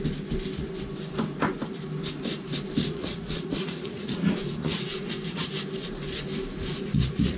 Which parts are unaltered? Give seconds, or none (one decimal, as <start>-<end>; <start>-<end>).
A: 0.0-2.8; 5.5-6.7